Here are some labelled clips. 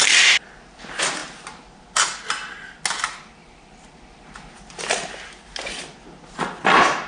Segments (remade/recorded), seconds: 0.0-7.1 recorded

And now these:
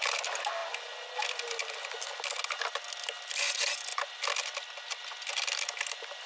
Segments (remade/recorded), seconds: 0.0-6.3 recorded

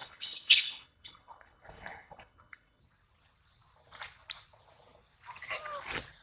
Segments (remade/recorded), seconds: 0.0-2.8 remade; 2.8-6.2 recorded